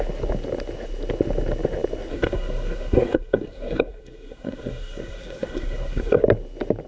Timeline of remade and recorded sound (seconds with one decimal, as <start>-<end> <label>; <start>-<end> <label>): 0.0-2.1 recorded; 2.1-6.2 remade; 6.2-6.9 recorded